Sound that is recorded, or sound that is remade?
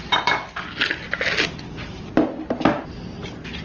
recorded